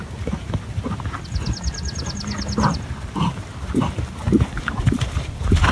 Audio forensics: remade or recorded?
recorded